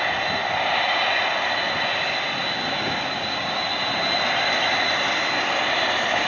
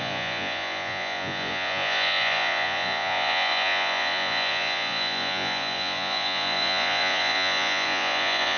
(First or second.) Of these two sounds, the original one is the first